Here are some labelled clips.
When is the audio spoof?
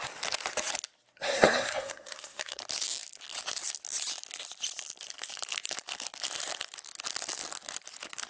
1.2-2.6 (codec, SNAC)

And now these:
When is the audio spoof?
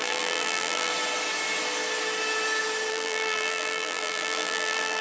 0.0-0.9 (vocoder, BigVGAN v2); 2.9-5.0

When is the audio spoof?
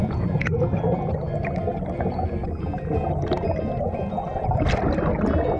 0.0-0.5 (vocoder, Vocos)